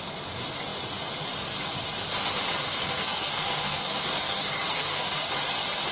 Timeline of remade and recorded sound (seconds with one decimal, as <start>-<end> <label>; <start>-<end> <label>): 0.0-2.6 recorded; 2.6-5.3 remade; 5.3-5.9 recorded